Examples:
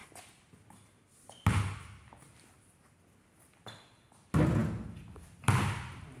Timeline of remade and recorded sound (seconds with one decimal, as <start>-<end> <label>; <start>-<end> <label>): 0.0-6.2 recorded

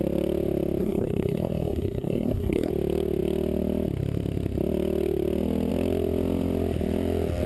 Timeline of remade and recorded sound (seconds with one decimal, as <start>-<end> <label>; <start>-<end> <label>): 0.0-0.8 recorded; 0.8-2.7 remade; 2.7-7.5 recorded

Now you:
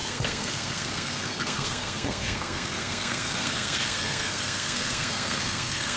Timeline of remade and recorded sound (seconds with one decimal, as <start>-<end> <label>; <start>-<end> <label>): 0.0-6.0 remade

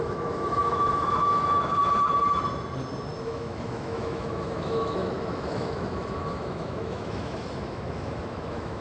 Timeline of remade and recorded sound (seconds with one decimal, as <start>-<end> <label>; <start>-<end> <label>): 0.0-1.8 remade; 1.8-3.2 recorded; 3.2-8.8 remade

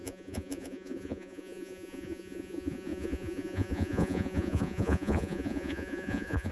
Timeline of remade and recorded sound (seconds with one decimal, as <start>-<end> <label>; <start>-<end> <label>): 0.0-6.5 remade

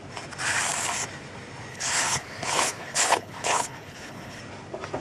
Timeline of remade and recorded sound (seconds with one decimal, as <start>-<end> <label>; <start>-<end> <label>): 0.0-1.7 recorded; 1.7-4.4 remade; 4.4-5.0 recorded